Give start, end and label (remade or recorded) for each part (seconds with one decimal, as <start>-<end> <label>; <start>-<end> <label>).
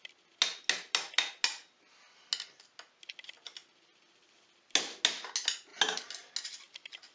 0.0-7.1 recorded